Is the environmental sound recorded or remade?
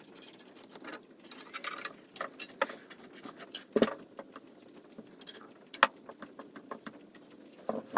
recorded